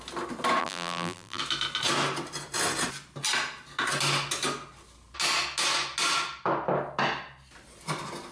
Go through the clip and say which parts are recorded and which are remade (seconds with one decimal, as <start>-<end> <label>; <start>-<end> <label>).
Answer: 0.0-0.6 recorded; 0.6-1.4 remade; 1.4-8.3 recorded